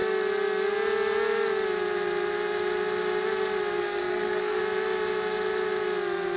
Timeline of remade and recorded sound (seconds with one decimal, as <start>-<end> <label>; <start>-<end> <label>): 0.0-3.8 recorded; 3.8-4.6 remade; 4.6-6.4 recorded